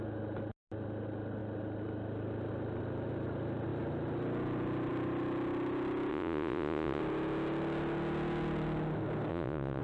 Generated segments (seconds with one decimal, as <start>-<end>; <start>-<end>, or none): 6.1-7.0; 9.3-9.8